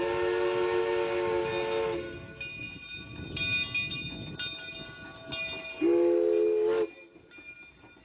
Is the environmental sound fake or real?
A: real